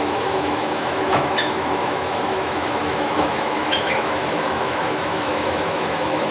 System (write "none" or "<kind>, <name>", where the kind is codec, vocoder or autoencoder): autoencoder, DAC-VAE